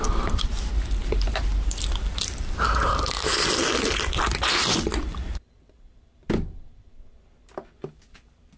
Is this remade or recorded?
remade